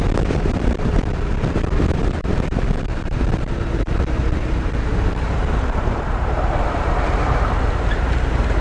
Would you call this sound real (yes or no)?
no